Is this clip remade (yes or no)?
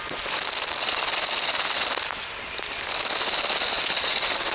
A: no